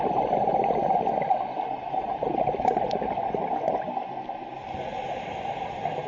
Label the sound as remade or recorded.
recorded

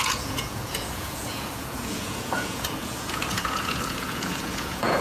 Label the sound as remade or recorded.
remade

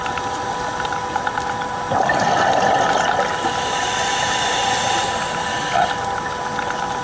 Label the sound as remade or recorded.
recorded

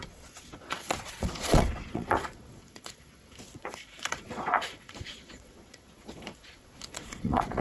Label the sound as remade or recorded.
remade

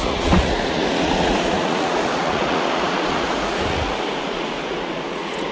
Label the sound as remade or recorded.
remade